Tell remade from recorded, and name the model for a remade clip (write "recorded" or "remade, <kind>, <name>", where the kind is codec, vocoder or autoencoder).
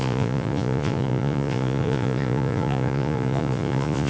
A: remade, vocoder, Vocos